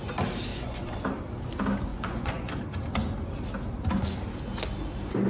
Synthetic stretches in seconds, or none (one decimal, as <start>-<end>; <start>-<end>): 0.5-1.0; 1.9-2.5